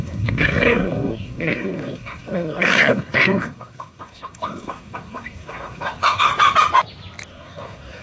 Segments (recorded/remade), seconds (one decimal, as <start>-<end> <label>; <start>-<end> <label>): 0.0-6.3 remade; 6.3-7.3 recorded; 7.3-8.0 remade